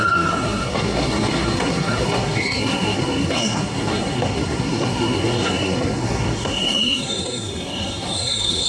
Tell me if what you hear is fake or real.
fake